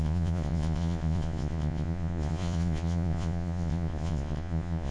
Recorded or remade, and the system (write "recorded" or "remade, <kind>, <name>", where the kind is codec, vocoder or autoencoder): remade, vocoder, Vocos